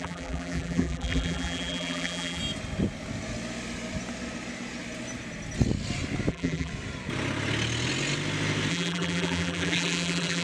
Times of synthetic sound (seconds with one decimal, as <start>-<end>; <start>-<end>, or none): 0.0-2.4; 6.3-6.7; 8.7-10.4